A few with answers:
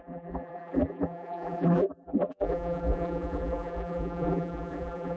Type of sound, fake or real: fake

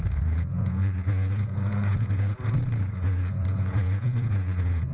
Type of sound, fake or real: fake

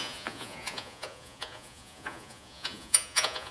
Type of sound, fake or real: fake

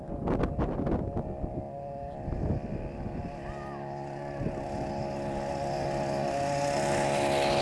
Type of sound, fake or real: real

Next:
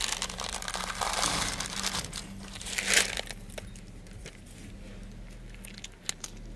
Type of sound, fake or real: real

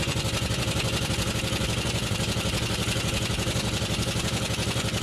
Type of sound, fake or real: fake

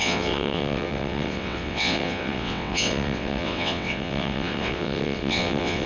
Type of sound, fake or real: fake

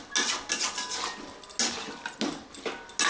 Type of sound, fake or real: real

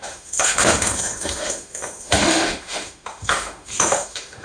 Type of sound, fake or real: fake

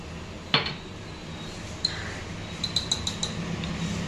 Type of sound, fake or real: real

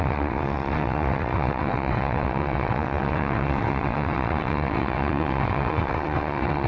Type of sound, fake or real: fake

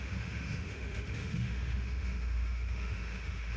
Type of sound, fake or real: fake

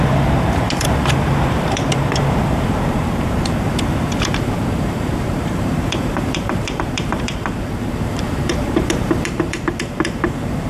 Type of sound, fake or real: fake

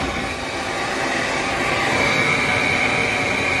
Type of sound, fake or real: real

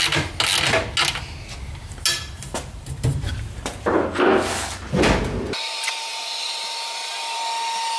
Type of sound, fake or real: real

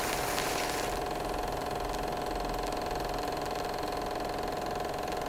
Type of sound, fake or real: real